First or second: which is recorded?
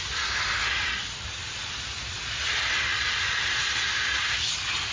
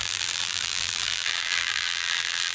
first